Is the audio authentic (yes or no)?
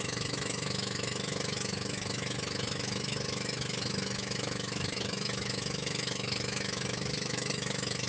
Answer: no